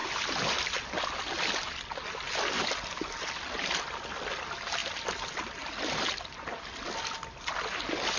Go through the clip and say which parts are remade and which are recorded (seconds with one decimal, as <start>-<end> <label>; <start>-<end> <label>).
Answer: 0.0-8.2 recorded